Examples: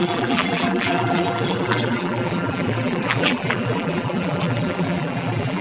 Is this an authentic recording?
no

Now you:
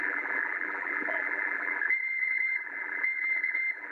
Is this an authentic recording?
no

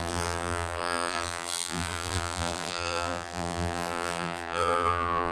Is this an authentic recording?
no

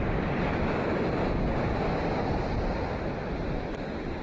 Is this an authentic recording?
yes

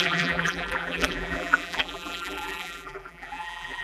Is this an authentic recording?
no